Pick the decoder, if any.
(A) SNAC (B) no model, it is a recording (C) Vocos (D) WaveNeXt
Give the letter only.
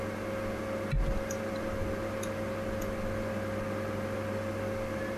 B